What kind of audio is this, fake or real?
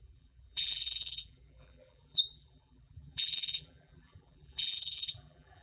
fake